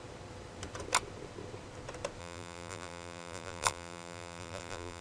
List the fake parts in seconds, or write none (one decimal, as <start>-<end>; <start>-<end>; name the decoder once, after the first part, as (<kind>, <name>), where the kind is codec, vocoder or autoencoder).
2.2-5.0 (vocoder, BigVGAN v2)